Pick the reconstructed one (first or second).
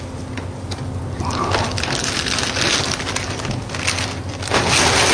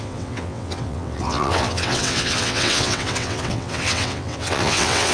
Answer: second